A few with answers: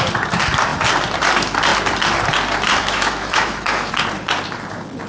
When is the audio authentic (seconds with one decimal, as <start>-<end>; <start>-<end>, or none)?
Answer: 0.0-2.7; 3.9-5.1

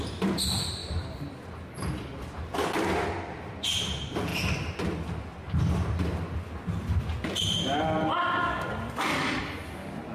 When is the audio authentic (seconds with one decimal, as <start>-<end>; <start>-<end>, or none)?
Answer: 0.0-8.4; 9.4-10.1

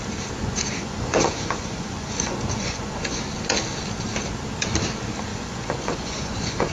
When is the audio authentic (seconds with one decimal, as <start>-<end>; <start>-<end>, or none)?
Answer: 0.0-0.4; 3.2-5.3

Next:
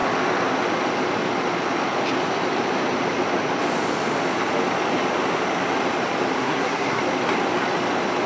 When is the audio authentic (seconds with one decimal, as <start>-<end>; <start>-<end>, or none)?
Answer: 0.0-6.4; 7.0-8.3

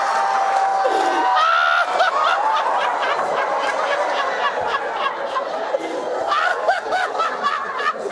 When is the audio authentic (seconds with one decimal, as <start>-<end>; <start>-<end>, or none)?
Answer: 0.0-6.5; 7.2-8.1

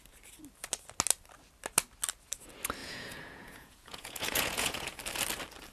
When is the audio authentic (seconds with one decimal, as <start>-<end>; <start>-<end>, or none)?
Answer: 0.0-2.8; 5.0-5.7

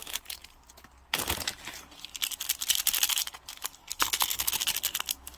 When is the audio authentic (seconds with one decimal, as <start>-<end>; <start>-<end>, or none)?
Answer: 0.0-3.8; 4.5-5.4

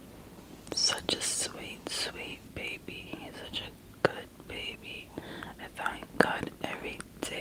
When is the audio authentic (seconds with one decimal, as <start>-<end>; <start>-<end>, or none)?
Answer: 0.0-4.6; 5.2-7.4